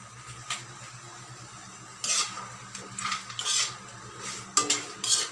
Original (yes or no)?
yes